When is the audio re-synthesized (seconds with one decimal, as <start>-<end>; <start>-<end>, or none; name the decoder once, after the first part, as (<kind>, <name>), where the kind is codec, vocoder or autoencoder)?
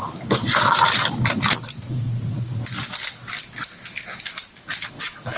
none